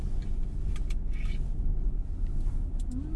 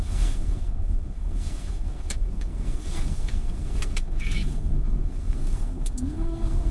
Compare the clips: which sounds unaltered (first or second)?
first